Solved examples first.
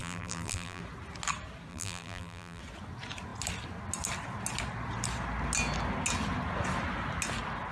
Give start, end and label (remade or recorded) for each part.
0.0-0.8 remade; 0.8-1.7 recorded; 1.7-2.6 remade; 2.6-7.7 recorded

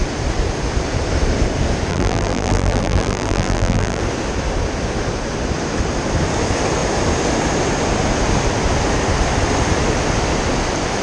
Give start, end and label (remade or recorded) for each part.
0.0-1.9 recorded; 1.9-4.0 remade; 4.0-11.0 recorded

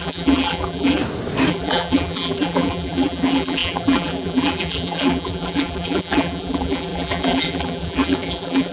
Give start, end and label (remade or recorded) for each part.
0.0-1.0 remade; 1.0-1.5 recorded; 1.5-8.7 remade

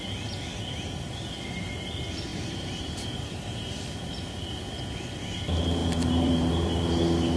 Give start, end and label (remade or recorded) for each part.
0.0-0.5 recorded; 0.5-1.3 remade; 1.3-2.3 recorded; 2.3-4.1 remade; 4.1-5.8 recorded; 5.8-6.5 remade; 6.5-7.4 recorded

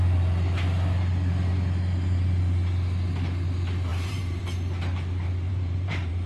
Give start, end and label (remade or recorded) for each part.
0.0-3.9 recorded; 3.9-4.4 remade; 4.4-5.5 recorded; 5.5-6.3 remade

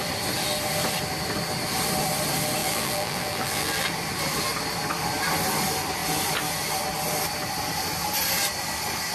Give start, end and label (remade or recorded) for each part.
0.0-2.6 recorded; 2.6-3.9 remade; 3.9-9.1 recorded